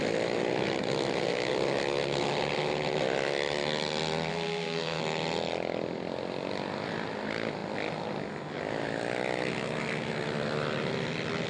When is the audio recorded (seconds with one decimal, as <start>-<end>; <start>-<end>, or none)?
0.0-4.3; 5.0-11.5